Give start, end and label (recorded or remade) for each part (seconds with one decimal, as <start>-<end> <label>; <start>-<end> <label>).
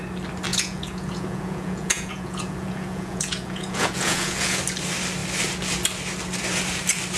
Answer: 0.0-0.5 recorded; 0.5-4.6 remade; 4.6-7.2 recorded